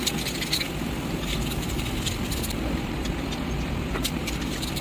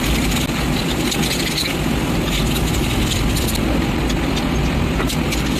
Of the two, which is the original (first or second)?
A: second